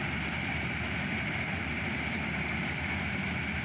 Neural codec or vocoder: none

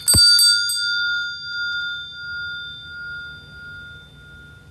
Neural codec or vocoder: none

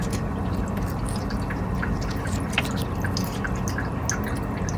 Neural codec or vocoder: none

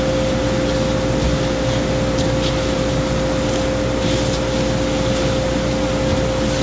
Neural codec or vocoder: none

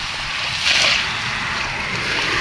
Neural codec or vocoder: vocoder, BigVGAN v2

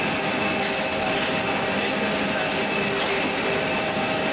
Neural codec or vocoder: none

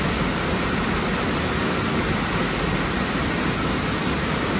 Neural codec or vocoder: none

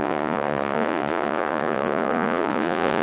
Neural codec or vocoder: vocoder, Vocos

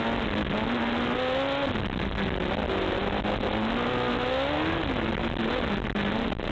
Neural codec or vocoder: none